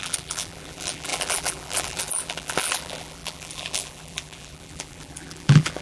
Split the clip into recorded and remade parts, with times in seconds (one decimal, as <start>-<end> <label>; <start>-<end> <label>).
0.0-5.8 remade